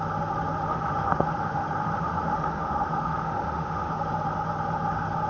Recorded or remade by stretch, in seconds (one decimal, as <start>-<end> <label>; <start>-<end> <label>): 0.0-0.7 recorded; 0.7-3.9 remade; 3.9-5.3 recorded